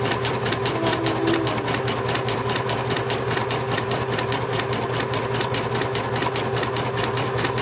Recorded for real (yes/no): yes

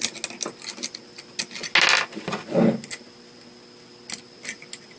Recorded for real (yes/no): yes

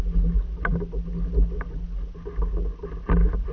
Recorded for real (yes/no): yes